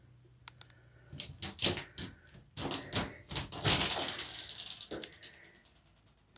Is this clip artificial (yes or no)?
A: no